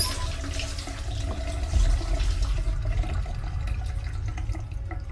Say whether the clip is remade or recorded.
recorded